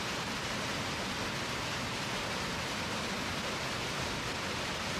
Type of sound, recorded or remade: recorded